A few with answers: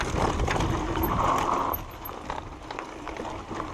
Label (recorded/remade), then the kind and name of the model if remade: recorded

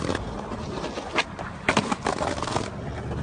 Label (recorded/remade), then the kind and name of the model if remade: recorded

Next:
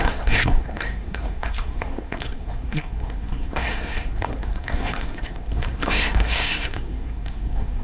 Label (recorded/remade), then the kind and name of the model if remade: remade, codec, SNAC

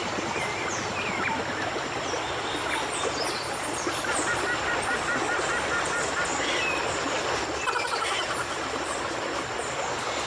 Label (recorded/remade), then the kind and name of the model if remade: recorded